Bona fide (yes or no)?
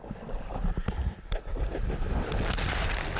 yes